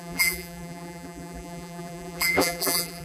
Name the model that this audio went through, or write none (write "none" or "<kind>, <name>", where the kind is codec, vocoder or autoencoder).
vocoder, BigVGAN v2